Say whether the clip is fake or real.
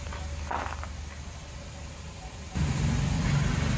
real